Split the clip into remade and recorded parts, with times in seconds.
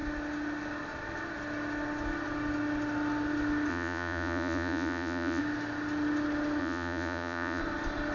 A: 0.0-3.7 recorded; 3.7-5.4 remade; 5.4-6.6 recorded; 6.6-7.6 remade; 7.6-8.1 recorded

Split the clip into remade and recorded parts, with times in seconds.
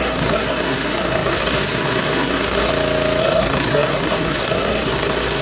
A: 0.0-2.7 remade; 2.7-3.2 recorded; 3.2-5.4 remade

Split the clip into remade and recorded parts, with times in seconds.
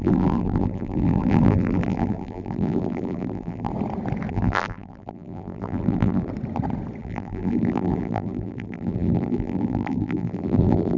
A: 0.0-3.7 remade; 3.7-4.3 recorded; 4.3-6.3 remade; 6.3-7.0 recorded; 7.0-11.0 remade